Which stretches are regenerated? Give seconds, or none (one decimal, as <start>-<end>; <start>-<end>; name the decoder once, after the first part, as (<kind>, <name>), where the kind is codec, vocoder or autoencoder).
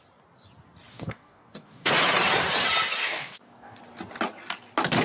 0.9-1.9 (codec, DAC); 3.0-3.8